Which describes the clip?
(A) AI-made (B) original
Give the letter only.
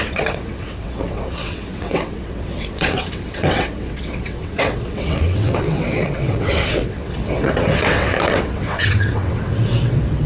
A